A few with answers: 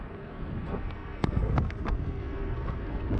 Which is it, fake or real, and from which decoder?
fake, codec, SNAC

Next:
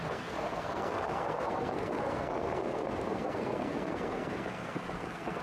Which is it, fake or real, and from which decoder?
fake, codec, SNAC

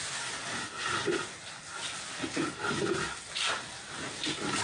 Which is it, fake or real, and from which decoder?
real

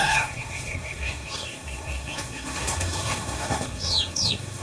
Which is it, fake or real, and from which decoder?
fake, codec, SNAC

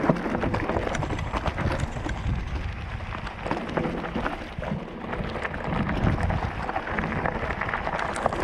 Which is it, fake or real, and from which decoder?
real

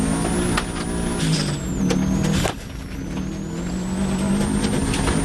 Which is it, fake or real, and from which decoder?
real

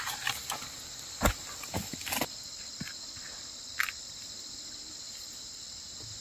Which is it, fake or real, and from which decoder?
real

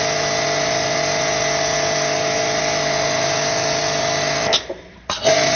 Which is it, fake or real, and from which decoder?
real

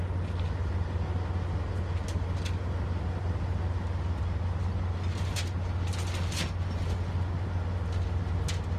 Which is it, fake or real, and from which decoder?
real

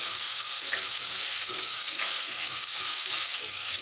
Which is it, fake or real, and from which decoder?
fake, codec, SNAC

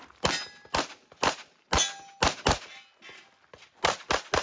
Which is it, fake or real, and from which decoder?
real